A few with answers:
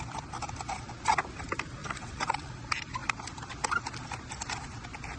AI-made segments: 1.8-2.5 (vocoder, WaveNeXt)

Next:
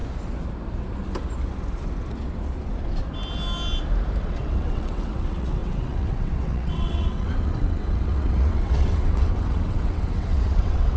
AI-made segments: 4.2-11.0 (vocoder, WaveNeXt)

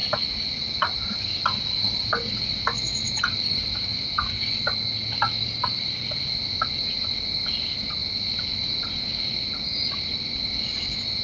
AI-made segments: none

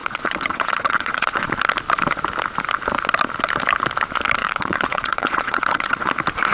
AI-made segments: 0.0-1.5 (vocoder, WaveNeXt); 4.4-6.1

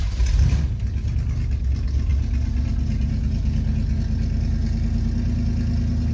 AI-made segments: none